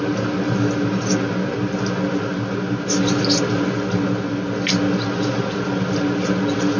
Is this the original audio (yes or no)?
yes